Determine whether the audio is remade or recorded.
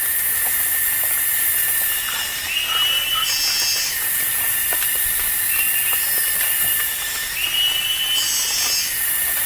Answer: recorded